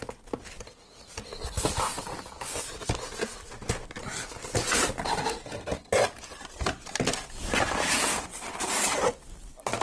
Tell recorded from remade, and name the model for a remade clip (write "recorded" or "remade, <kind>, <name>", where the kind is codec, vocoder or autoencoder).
recorded